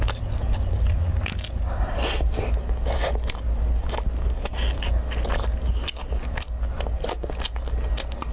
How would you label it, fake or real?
real